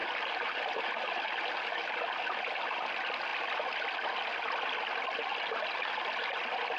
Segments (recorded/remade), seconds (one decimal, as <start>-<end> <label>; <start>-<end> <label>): 0.0-6.8 recorded